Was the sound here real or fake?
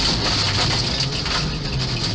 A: real